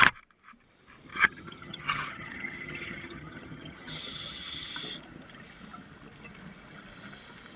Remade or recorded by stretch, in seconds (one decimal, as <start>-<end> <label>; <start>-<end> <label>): 0.0-1.1 recorded; 1.1-4.7 remade; 4.7-7.6 recorded

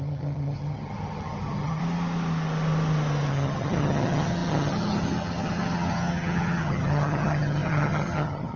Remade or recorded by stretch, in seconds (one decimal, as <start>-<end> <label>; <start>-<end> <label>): 0.0-1.8 remade; 1.8-3.3 recorded; 3.3-8.6 remade

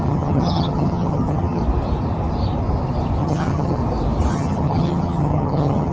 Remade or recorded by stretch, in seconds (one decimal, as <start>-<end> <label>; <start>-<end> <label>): 0.0-1.6 remade; 1.6-3.2 recorded; 3.2-3.8 remade; 3.8-4.3 recorded; 4.3-5.9 remade

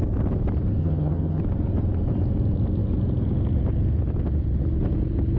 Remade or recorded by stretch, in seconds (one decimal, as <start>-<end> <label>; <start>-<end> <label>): 0.0-0.8 recorded; 0.8-1.4 remade; 1.4-5.4 recorded